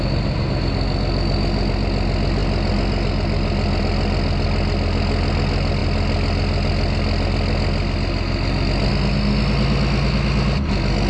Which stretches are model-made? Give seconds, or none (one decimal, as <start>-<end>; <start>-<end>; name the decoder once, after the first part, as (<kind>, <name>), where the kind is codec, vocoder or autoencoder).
none